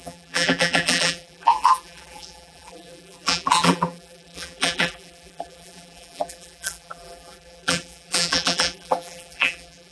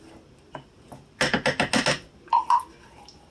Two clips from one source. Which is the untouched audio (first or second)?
second